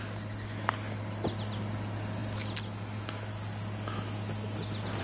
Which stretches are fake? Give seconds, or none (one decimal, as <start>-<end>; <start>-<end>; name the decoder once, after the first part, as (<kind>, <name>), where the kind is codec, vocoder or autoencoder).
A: none